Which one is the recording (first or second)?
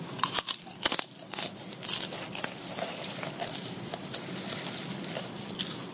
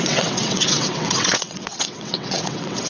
first